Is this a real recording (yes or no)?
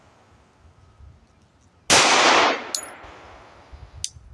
yes